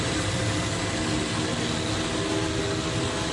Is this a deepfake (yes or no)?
no